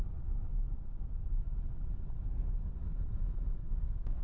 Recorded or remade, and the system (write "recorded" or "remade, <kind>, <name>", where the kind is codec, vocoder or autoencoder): recorded